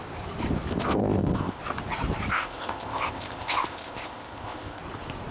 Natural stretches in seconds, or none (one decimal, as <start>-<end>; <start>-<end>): 0.0-0.7; 1.6-2.3; 4.8-5.3